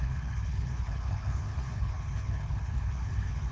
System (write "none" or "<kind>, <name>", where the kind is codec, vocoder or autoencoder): codec, HILCodec